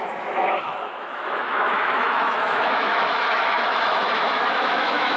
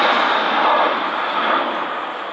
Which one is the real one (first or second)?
second